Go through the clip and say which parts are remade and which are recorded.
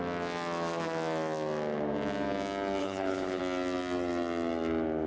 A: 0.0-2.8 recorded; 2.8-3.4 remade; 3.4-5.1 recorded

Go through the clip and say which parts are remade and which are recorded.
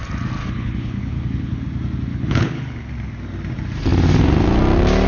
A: 0.0-0.4 recorded; 0.4-1.6 remade; 1.6-2.1 recorded; 2.1-2.9 remade; 2.9-5.1 recorded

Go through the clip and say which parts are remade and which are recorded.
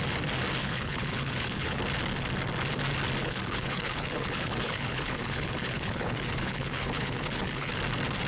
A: 0.0-0.6 recorded; 0.6-1.8 remade; 1.8-3.2 recorded; 3.2-7.8 remade; 7.8-8.3 recorded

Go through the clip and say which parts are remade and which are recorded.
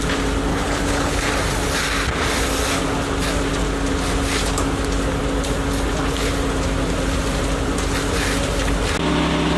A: 0.0-0.5 recorded; 0.5-1.3 remade; 1.3-9.6 recorded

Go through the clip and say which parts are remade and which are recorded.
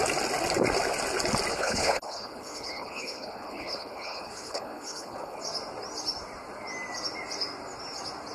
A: 0.0-1.5 recorded; 1.5-5.4 remade; 5.4-8.3 recorded